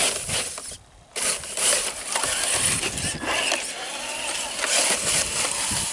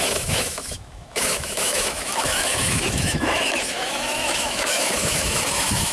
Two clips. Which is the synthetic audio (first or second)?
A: second